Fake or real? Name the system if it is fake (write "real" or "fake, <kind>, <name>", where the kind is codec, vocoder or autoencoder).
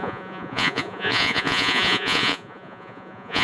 fake, vocoder, Vocos